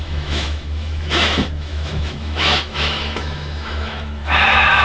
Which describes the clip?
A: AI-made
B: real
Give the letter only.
A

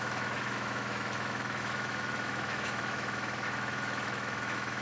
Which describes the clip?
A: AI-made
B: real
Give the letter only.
A